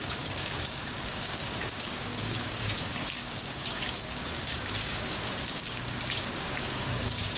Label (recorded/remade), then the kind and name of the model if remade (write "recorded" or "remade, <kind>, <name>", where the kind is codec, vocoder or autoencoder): remade, codec, DAC